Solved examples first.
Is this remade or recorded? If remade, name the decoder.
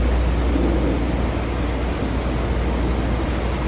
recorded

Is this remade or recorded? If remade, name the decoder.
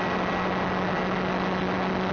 recorded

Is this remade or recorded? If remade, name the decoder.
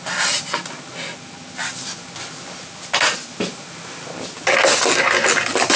recorded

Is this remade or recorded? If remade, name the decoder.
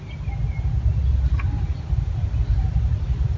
recorded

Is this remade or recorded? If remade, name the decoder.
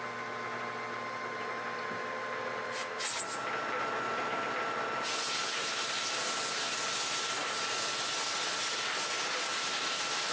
recorded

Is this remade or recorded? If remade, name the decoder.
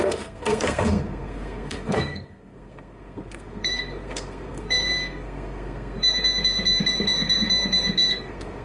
remade, codec, SNAC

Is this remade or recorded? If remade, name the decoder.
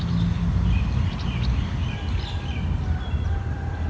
recorded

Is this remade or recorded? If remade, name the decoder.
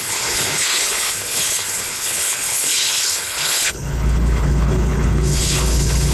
remade, codec, HILCodec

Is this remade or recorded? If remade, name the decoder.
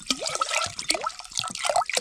recorded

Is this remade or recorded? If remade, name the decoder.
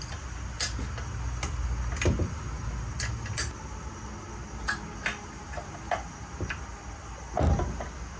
recorded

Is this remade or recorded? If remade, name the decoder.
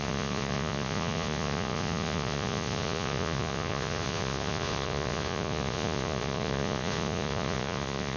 remade, vocoder, Vocos